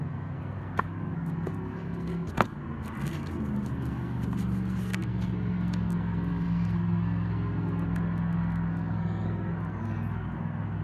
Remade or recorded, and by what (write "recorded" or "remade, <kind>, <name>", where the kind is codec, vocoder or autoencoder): remade, codec, SNAC